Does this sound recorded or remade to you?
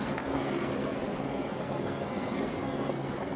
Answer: remade